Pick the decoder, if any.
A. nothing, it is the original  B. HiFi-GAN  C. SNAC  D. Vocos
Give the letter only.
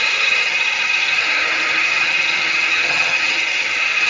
B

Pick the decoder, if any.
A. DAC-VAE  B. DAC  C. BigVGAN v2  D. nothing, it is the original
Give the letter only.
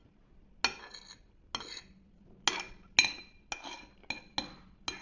D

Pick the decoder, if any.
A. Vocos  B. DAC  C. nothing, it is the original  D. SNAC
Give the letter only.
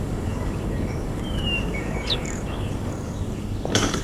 B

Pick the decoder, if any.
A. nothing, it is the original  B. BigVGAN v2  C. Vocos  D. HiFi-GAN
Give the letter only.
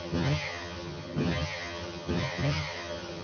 D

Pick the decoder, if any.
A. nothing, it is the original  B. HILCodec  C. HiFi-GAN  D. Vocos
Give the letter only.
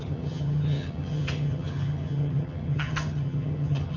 C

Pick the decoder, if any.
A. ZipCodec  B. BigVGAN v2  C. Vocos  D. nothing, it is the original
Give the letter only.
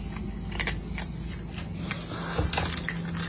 D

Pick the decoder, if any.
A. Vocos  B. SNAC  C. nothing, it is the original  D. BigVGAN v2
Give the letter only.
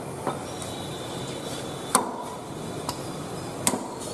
C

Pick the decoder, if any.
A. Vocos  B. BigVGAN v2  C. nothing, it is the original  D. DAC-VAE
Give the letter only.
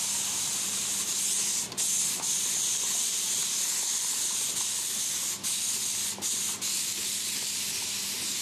C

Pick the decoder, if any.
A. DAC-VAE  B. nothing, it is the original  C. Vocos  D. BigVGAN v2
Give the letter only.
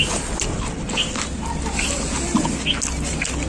B